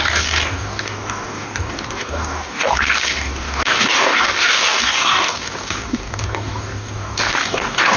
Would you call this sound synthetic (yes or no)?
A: yes